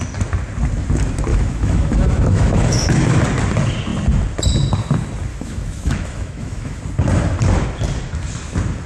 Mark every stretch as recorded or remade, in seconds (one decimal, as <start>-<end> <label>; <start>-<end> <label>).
0.0-1.3 recorded; 1.3-3.2 remade; 3.2-5.3 recorded; 5.3-6.8 remade; 6.8-8.9 recorded